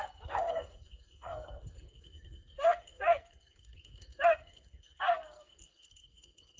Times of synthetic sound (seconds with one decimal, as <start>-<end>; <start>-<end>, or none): 0.0-6.6